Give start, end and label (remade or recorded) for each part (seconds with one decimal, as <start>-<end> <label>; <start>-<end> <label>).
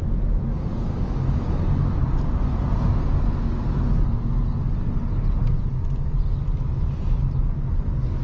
0.0-8.2 recorded